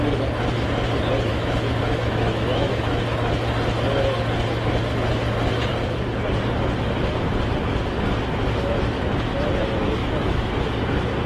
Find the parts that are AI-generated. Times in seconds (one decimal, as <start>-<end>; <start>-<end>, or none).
1.3-3.0; 10.0-10.5